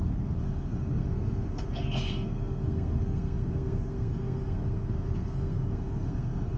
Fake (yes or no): yes